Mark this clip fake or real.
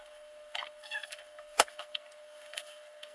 fake